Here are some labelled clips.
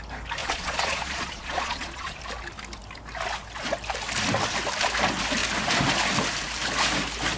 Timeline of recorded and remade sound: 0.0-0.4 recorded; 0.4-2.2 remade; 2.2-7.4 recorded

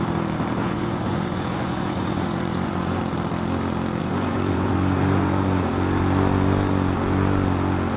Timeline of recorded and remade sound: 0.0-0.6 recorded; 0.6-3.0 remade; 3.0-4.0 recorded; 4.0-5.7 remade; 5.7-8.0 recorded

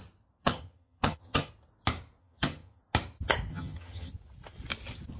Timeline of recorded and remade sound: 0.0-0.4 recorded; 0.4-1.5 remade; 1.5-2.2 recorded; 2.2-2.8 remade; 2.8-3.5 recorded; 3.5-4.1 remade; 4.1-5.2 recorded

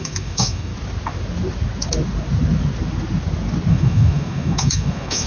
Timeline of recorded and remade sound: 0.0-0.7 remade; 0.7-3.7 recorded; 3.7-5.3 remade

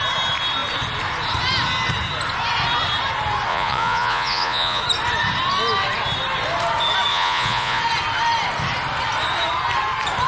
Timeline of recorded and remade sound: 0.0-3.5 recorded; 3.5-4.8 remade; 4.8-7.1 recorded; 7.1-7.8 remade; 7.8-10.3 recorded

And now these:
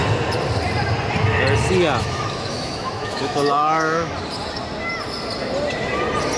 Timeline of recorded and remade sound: 0.0-2.0 recorded; 2.0-4.1 remade; 4.1-6.4 recorded

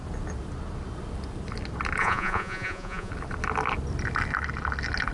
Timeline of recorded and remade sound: 0.0-2.0 recorded; 2.0-3.1 remade; 3.1-5.1 recorded